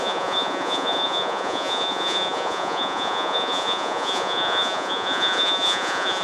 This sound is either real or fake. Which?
fake